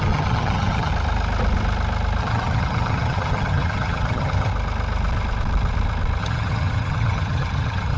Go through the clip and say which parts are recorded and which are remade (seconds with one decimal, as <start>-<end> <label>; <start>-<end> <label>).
0.0-0.9 remade; 0.9-2.2 recorded; 2.2-4.5 remade; 4.5-6.2 recorded; 6.2-8.0 remade